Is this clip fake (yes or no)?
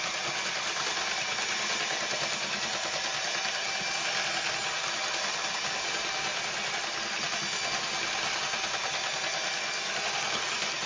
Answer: no